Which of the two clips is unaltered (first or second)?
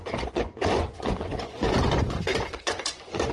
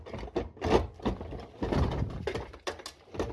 second